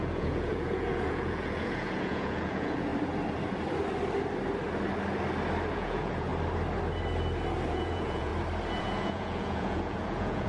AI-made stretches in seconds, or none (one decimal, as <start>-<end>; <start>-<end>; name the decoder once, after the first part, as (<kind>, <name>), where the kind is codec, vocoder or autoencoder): 0.0-2.9 (vocoder, Vocos); 5.7-6.3; 7.7-8.3; 8.8-10.5